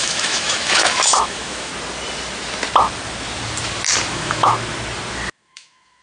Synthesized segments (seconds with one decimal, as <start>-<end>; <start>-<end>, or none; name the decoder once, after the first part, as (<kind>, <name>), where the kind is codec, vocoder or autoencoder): 0.0-1.7 (autoencoder, DAC-VAE); 4.1-4.5; 5.3-6.0